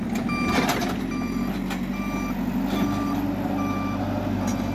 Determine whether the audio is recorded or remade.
recorded